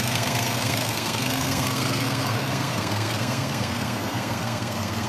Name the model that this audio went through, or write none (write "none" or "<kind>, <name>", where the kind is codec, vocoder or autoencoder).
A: codec, SNAC